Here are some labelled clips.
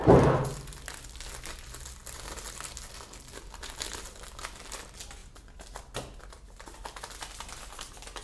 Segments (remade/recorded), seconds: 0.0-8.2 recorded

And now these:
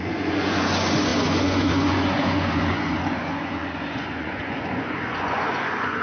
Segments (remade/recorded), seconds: 0.0-6.0 remade

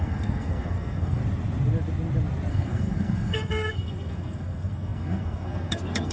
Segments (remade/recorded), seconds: 0.0-1.2 remade; 1.2-2.5 recorded; 2.5-6.1 remade

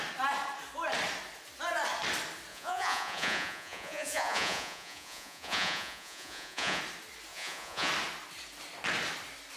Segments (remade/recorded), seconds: 0.0-2.5 recorded; 2.5-6.8 remade; 6.8-7.3 recorded; 7.3-7.9 remade; 7.9-9.6 recorded